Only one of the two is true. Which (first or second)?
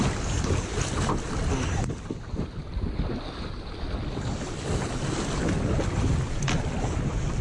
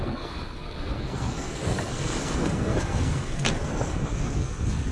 first